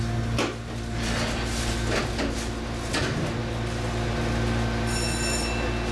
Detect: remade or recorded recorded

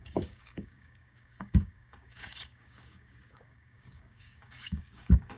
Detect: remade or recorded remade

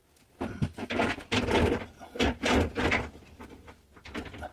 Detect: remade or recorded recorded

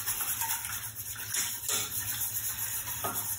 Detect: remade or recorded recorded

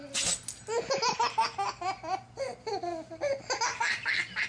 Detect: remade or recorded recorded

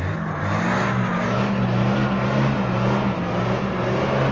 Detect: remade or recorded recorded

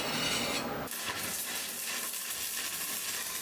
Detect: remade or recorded recorded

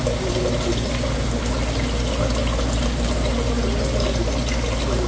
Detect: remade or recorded recorded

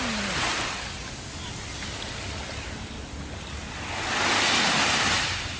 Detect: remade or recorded recorded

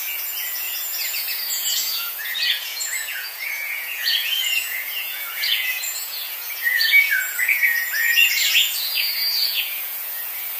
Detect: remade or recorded remade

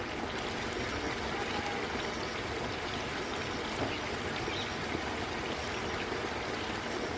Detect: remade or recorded recorded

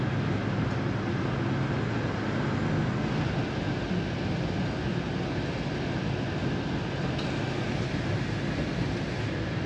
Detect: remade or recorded recorded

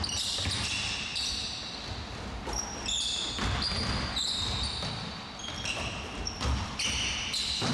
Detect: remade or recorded recorded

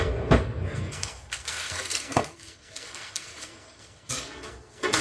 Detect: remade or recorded remade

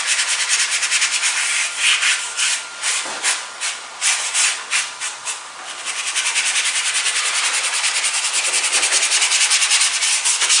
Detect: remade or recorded recorded